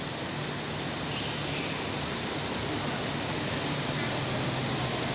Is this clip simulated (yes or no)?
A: no